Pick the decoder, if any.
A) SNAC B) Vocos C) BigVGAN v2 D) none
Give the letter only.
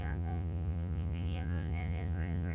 B